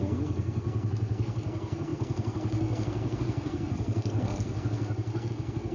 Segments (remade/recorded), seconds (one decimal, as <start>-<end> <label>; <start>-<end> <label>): 0.0-5.7 remade